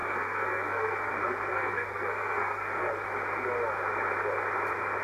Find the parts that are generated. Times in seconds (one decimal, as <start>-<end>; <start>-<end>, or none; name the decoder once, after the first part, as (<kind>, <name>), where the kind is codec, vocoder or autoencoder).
0.0-1.1 (codec, SNAC); 1.5-2.9